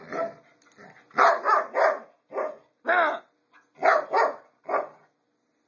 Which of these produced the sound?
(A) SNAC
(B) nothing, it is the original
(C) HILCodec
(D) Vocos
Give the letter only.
B